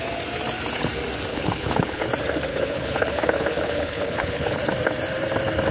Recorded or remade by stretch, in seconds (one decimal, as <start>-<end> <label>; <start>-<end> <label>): 0.0-1.3 recorded; 1.3-2.1 remade; 2.1-2.5 recorded; 2.5-4.6 remade; 4.6-5.7 recorded